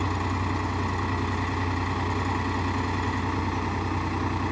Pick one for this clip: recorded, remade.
recorded